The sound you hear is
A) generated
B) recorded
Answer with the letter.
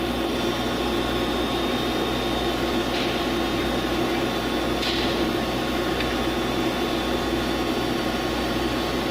B